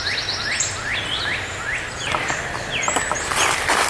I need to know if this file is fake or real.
real